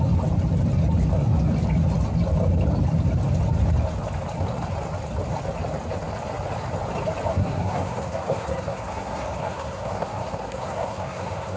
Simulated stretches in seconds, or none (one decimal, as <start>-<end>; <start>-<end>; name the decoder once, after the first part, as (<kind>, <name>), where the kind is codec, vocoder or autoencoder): 7.3-11.6 (codec, SNAC)